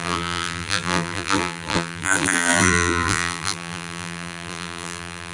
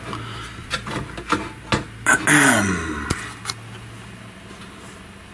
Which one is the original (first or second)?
second